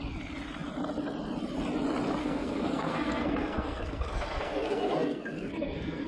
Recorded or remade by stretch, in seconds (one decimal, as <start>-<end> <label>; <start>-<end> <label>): 0.0-2.2 recorded; 2.2-6.1 remade